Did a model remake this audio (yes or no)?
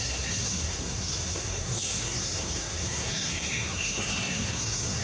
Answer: yes